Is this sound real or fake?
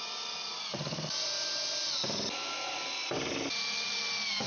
real